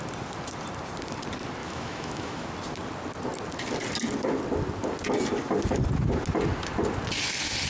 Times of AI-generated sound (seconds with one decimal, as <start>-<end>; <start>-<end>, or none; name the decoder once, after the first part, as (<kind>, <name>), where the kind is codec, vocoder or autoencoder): 1.6-2.5 (autoencoder, DAC-VAE)